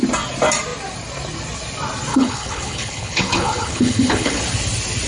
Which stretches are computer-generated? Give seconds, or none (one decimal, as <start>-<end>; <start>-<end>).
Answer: 2.1-4.4